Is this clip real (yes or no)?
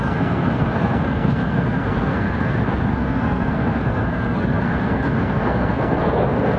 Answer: no